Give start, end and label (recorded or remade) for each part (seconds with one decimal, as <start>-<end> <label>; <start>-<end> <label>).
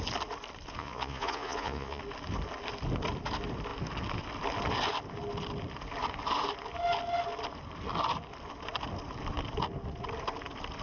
0.0-0.8 recorded; 0.8-2.0 remade; 2.0-10.8 recorded